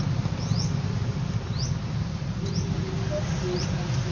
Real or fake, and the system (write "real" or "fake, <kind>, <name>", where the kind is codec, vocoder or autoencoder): real